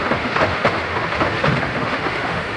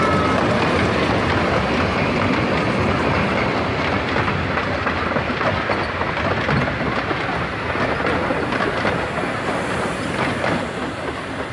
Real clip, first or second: second